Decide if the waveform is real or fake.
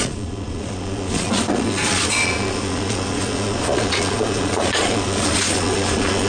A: fake